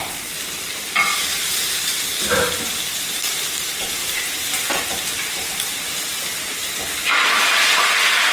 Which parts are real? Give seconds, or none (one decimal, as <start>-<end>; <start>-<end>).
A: 0.0-1.1